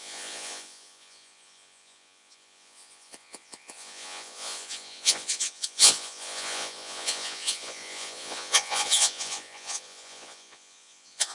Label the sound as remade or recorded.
remade